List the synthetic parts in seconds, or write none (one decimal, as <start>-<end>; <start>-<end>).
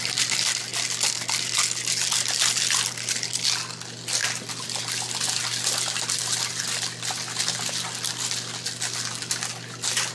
none